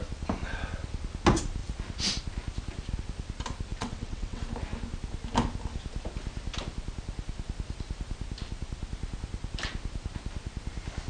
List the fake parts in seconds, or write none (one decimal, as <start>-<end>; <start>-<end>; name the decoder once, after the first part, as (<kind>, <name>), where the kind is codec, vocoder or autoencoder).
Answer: 3.7-4.4 (vocoder, WaveNeXt)